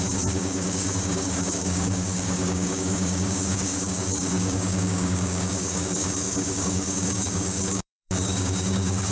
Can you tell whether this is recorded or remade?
remade